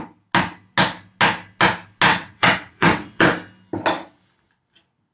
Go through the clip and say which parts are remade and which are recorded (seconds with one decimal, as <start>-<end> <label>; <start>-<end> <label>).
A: 0.0-2.1 recorded; 2.1-3.2 remade; 3.2-5.1 recorded